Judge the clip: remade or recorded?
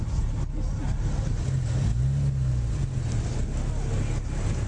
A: recorded